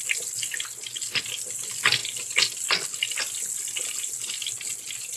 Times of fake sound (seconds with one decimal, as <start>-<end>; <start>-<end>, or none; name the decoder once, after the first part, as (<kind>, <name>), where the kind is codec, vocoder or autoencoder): none